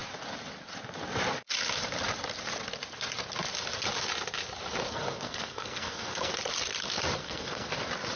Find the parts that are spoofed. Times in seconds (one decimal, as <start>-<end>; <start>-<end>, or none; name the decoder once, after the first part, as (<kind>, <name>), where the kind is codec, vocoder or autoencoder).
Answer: 4.9-6.3 (codec, SNAC); 7.2-7.7